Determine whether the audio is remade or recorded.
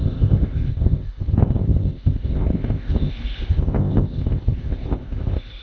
remade